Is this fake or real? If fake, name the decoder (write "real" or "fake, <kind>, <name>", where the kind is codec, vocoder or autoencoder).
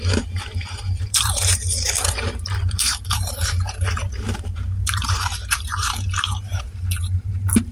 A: fake, vocoder, BigVGAN v2